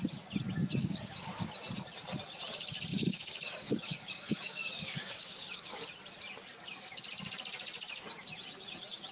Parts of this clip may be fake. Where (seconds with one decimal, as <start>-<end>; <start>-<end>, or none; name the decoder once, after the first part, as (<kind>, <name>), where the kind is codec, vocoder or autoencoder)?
0.8-1.5 (codec, DAC); 2.9-5.9